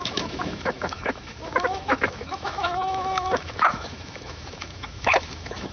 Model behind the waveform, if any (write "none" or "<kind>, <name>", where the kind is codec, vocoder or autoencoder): autoencoder, DAC-VAE